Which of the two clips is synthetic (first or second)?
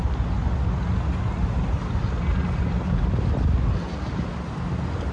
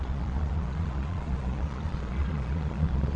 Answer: second